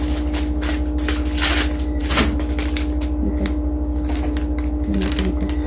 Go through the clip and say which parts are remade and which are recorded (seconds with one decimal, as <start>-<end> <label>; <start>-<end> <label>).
0.0-5.7 recorded